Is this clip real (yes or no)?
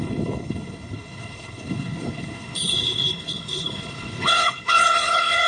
no